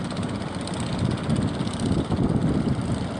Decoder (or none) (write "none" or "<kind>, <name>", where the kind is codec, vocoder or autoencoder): none